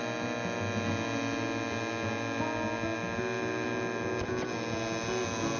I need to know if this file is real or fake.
real